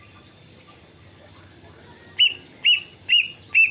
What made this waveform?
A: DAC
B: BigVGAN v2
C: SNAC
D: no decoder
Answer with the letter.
B